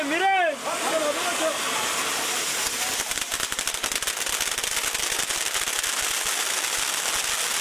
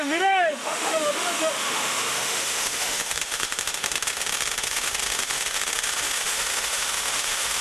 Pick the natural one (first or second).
first